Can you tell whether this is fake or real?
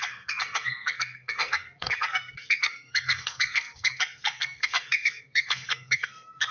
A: fake